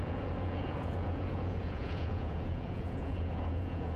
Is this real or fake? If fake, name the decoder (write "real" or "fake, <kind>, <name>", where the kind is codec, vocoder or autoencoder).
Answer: fake, vocoder, Vocos